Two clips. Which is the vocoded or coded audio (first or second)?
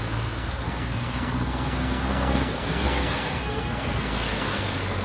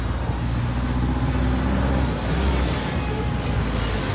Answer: first